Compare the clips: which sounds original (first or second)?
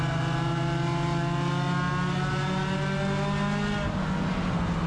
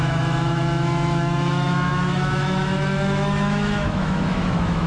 first